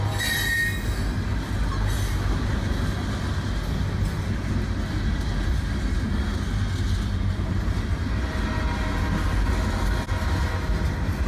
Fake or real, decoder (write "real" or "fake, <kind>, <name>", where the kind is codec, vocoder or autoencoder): real